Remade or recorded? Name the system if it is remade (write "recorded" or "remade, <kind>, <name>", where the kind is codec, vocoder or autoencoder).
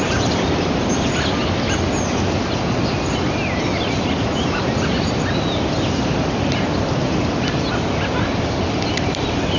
recorded